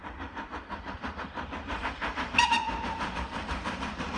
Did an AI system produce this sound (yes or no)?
yes